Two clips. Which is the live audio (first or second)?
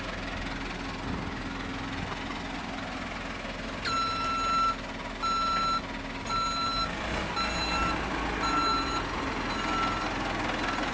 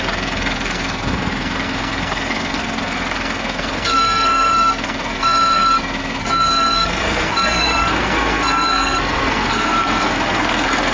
first